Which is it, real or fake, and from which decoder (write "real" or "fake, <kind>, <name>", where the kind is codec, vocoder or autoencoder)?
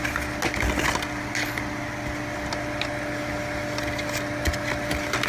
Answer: real